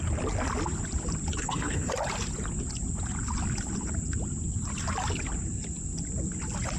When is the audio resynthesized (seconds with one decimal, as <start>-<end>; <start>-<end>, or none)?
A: 1.4-1.9